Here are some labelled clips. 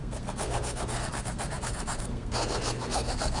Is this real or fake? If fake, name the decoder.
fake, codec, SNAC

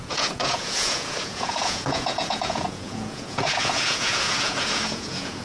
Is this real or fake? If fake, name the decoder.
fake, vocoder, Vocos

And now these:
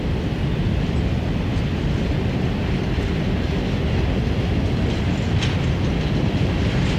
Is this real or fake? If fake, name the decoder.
real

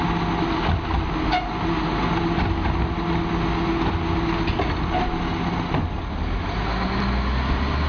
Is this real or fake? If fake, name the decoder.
real